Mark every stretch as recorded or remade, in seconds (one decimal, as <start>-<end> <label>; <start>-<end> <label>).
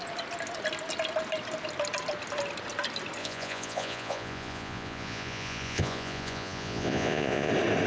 0.0-3.2 recorded; 3.2-7.5 remade; 7.5-7.9 recorded